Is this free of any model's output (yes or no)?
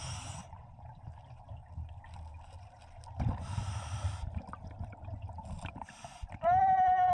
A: yes